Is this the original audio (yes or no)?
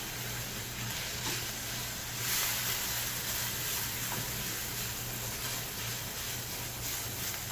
yes